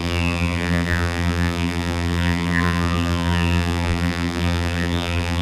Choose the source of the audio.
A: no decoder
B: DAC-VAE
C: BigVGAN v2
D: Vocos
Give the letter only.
C